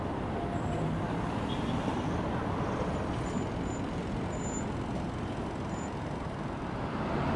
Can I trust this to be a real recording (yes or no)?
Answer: yes